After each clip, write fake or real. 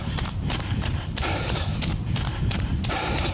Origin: fake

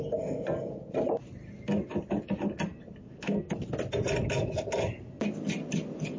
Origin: real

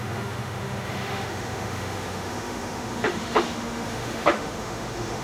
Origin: fake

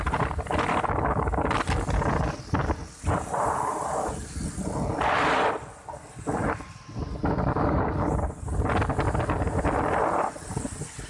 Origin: real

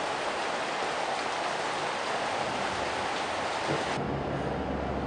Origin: real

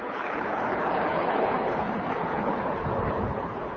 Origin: fake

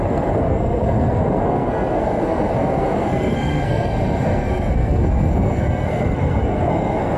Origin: fake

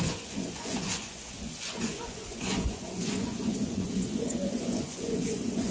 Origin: fake